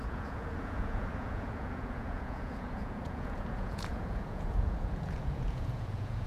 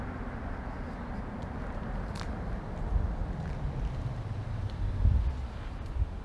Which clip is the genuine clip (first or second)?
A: second